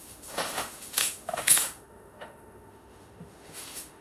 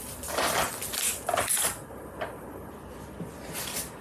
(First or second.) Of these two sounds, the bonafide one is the second